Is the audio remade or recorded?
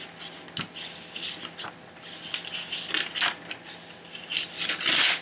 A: recorded